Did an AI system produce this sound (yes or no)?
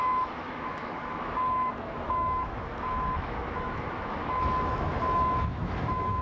yes